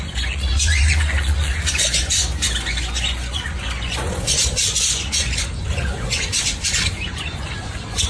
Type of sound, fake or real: fake